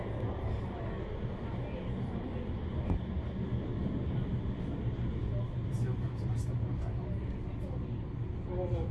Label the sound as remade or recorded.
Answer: recorded